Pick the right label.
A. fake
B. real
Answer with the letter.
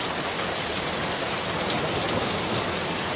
B